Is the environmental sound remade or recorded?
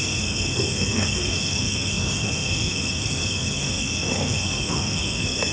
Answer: remade